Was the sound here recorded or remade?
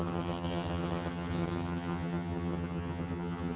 remade